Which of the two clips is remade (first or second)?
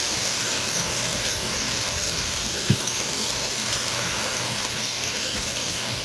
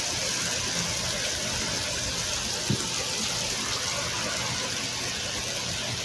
first